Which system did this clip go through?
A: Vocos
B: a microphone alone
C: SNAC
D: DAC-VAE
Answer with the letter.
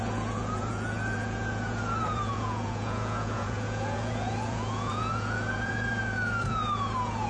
A